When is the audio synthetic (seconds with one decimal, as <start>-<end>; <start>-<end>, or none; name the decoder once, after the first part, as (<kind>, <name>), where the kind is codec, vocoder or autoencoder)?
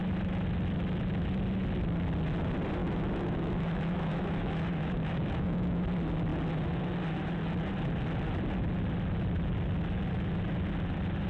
2.8-5.8 (autoencoder, DAC-VAE)